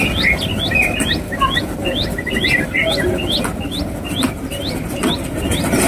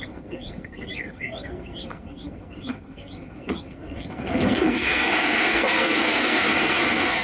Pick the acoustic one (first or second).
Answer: first